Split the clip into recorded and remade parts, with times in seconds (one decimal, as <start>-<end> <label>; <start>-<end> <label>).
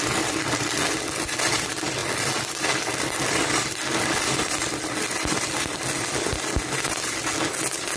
0.0-8.0 recorded